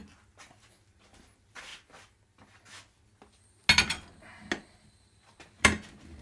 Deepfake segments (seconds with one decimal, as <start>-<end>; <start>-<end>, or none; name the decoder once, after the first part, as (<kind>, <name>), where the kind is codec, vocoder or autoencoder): none